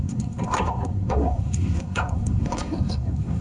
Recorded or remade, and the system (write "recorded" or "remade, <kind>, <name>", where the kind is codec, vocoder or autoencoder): remade, codec, SNAC